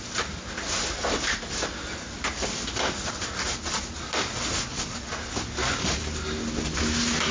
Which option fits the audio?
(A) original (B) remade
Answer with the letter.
A